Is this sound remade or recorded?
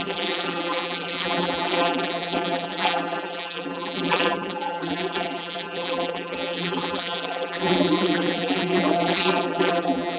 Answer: remade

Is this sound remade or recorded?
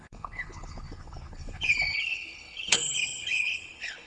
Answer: remade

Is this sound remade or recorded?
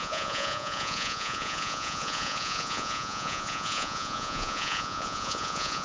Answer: remade